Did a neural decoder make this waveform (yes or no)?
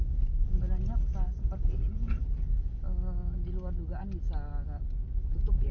no